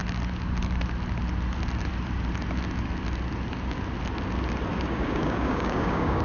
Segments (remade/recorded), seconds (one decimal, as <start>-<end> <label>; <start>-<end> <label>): 0.0-4.7 recorded; 4.7-6.2 remade